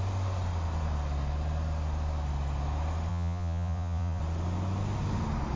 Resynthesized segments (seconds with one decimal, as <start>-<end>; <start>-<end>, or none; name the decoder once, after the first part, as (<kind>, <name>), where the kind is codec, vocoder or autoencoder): 3.1-4.2 (vocoder, Vocos)